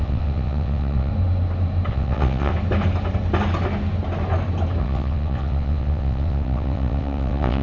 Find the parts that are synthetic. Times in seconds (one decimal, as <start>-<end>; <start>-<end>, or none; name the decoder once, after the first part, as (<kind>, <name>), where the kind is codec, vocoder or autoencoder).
0.0-1.1 (vocoder, WaveNeXt); 1.9-2.5; 4.8-7.6

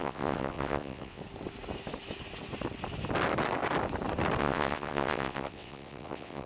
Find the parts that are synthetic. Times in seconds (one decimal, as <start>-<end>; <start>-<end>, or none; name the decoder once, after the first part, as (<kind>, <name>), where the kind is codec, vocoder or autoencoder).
0.0-1.2 (vocoder, WaveNeXt); 4.4-6.5

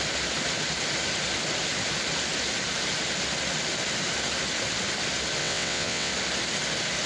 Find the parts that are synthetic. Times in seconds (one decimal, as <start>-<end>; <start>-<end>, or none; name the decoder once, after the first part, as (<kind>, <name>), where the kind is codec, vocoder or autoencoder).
5.4-6.1 (vocoder, WaveNeXt)

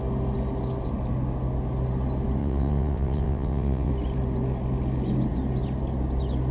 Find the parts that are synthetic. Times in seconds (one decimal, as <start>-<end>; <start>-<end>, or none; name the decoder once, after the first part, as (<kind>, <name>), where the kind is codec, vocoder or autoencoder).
2.4-3.9 (vocoder, WaveNeXt)

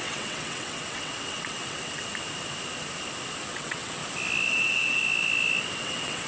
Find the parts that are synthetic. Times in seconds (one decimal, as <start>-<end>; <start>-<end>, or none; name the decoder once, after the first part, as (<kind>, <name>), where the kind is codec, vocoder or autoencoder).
0.0-2.1 (vocoder, WaveNeXt); 3.5-4.0; 4.5-5.0; 5.8-6.3